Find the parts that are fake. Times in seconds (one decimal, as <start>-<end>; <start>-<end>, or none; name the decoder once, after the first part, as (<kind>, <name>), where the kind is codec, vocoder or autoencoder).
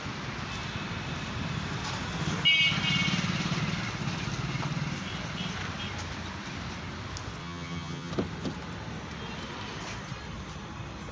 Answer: 7.4-8.1 (vocoder, HiFi-GAN)